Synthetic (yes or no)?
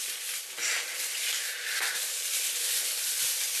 no